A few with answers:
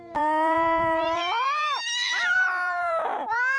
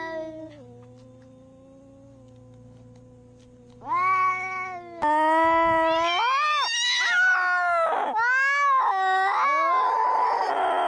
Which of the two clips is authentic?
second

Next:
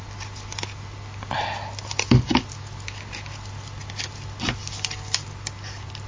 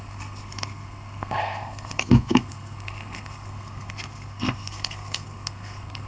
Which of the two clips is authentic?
first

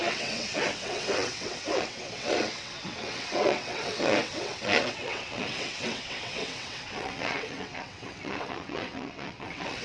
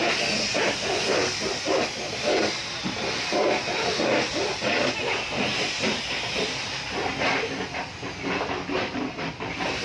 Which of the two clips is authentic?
second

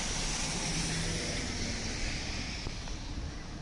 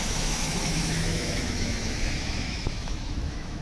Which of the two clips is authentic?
first